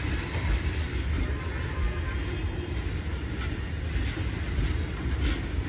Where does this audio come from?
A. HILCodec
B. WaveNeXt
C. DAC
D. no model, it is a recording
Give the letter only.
D